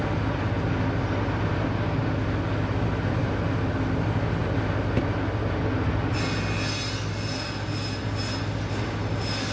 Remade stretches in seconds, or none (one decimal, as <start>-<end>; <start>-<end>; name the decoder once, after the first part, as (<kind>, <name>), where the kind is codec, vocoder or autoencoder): none